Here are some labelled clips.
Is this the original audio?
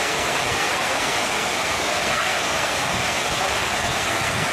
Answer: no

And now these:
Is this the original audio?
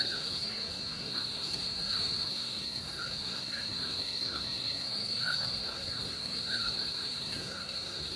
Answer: no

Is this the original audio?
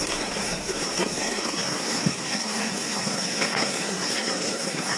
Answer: no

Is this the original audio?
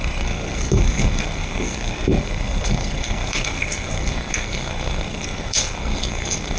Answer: no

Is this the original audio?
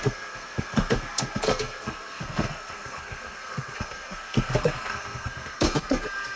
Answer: no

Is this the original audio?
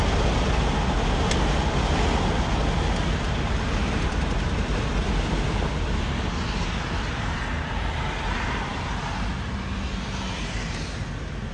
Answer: yes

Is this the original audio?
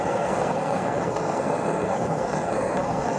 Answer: no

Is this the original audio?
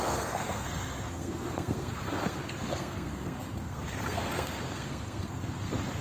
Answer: no